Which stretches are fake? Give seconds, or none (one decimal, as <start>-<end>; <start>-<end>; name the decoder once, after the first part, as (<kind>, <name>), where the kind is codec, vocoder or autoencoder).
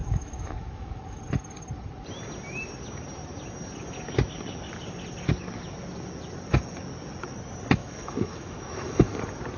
0.0-1.2 (autoencoder, DAC-VAE); 7.8-9.2